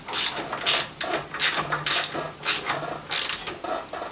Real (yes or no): yes